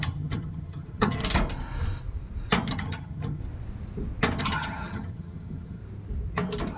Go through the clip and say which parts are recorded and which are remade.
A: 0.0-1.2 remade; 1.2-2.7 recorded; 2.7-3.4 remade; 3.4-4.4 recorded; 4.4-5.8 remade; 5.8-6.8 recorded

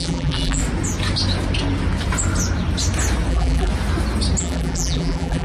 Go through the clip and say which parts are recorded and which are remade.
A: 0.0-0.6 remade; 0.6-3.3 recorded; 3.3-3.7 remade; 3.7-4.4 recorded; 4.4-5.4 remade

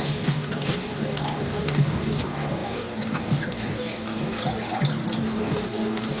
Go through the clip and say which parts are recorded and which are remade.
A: 0.0-4.4 remade; 4.4-5.2 recorded; 5.2-6.2 remade